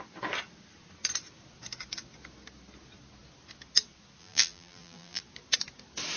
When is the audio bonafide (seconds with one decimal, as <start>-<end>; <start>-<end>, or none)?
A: 0.0-4.2; 5.2-6.2